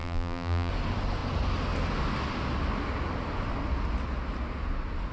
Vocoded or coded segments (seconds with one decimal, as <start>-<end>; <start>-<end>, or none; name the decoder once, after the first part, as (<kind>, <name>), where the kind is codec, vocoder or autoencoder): 0.0-0.7 (vocoder, BigVGAN v2)